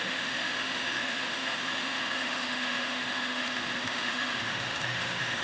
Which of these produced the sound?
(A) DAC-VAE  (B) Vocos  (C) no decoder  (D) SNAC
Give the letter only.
A